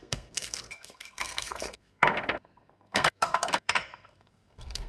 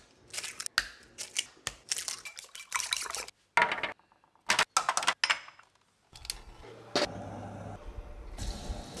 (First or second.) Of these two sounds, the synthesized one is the first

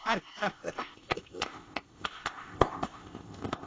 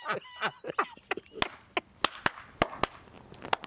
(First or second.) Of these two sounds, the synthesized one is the first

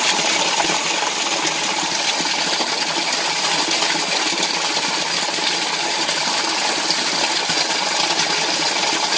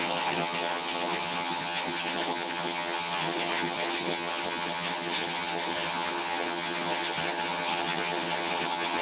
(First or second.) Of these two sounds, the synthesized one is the second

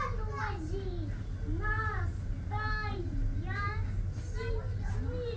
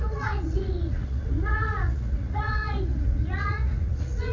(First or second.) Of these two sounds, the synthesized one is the second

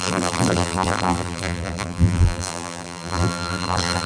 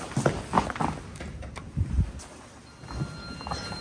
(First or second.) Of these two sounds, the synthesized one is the first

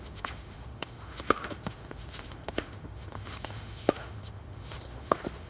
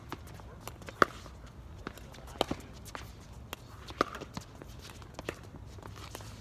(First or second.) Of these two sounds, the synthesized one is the first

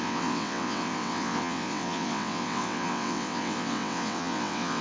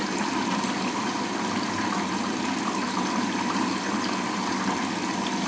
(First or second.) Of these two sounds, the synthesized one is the first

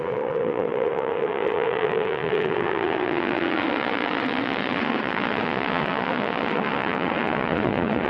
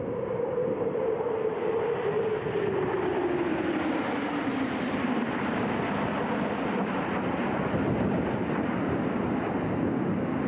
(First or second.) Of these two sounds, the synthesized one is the first